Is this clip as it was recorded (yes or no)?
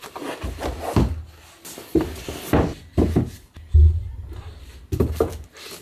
yes